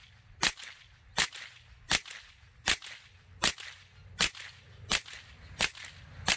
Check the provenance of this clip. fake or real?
real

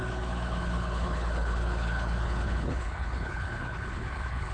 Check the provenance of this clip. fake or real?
fake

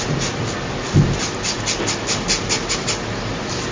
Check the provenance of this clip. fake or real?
real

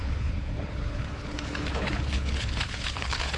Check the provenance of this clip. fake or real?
fake